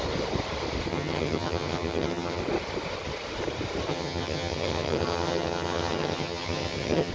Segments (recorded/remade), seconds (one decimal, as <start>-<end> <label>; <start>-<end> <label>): 0.0-0.9 recorded; 0.9-2.4 remade; 2.4-3.9 recorded; 3.9-7.1 remade